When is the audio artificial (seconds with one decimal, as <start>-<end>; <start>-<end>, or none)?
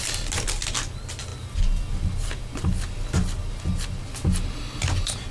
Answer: none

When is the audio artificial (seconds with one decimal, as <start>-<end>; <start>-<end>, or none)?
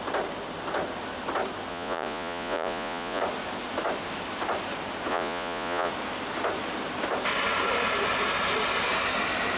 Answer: 1.7-3.2; 5.1-5.9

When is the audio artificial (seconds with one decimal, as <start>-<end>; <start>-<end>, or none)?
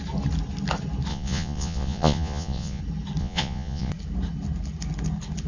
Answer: 1.1-2.8; 3.2-3.9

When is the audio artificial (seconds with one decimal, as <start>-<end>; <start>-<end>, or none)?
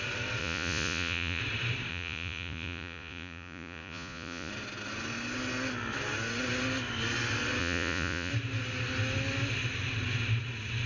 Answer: 0.4-1.4; 1.9-4.5; 7.6-8.3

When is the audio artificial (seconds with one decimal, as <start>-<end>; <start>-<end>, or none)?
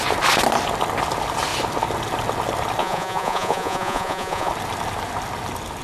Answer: 2.8-4.5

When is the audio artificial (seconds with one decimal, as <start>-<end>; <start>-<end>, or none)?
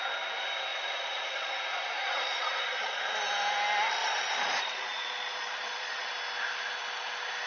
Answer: 0.7-1.5; 2.0-3.0; 4.0-6.1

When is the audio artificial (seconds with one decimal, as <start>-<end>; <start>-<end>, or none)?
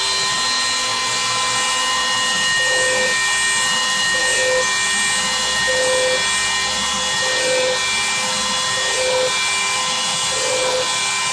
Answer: none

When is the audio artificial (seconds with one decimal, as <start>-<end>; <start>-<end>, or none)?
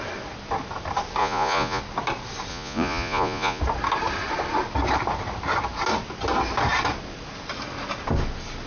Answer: 1.2-1.8; 2.5-3.6